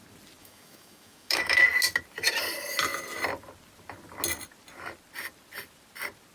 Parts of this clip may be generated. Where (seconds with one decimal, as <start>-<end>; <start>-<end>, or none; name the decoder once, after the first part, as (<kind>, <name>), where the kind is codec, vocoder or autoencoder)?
0.4-1.6 (autoencoder, DAC-VAE)